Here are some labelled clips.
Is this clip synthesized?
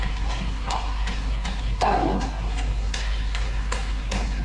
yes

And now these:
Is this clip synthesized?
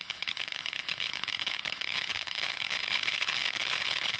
yes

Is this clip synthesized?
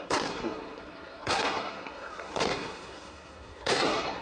yes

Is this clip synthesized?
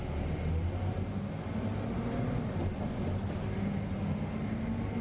no